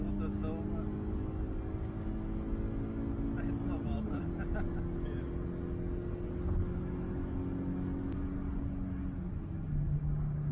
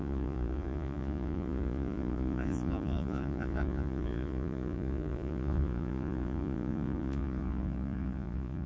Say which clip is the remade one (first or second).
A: second